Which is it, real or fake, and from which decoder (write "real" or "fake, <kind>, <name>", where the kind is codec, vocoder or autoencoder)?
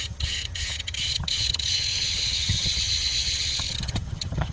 fake, vocoder, HiFi-GAN